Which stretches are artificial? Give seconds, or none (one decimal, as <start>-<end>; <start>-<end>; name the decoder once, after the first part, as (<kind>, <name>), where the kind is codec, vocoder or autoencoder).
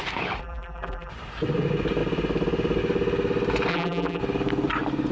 0.4-1.1 (vocoder, BigVGAN v2); 3.7-4.2